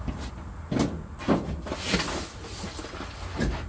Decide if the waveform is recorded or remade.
recorded